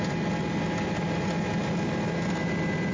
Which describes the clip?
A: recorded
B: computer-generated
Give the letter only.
A